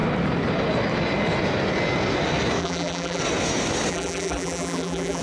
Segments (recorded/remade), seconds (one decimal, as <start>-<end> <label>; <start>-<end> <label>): 0.0-2.6 recorded; 2.6-3.2 remade; 3.2-3.9 recorded; 3.9-5.2 remade